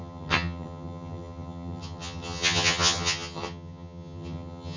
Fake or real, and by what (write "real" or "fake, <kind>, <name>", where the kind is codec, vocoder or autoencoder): fake, vocoder, HiFi-GAN